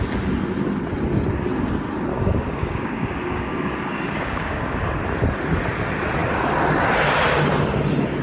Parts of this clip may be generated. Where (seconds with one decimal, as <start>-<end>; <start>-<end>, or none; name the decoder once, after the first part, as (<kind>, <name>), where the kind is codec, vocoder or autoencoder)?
2.1-5.0 (codec, DAC)